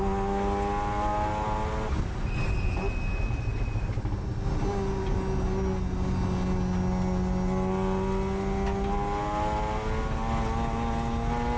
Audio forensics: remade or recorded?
recorded